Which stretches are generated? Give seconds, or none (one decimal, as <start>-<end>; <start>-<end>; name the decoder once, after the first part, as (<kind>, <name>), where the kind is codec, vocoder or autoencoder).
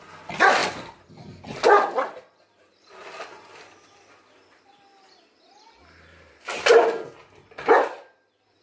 none